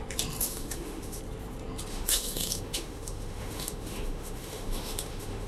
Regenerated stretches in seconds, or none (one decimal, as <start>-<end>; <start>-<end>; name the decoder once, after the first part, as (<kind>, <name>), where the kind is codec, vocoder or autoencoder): 0.4-1.2 (autoencoder, DAC-VAE); 1.9-5.5

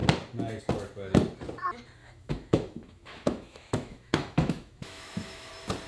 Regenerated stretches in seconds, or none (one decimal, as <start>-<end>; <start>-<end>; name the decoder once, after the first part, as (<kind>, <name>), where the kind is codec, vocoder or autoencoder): 2.0-5.5 (autoencoder, DAC-VAE)

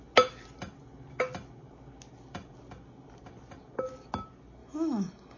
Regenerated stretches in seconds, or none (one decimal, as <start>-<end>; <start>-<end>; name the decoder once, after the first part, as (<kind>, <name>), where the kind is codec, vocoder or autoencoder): 4.6-5.4 (autoencoder, DAC-VAE)

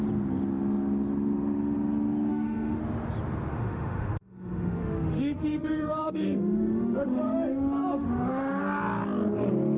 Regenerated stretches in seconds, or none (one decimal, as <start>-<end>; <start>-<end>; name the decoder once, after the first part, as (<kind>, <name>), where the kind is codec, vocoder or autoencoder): 2.3-2.8 (autoencoder, DAC-VAE); 3.5-8.6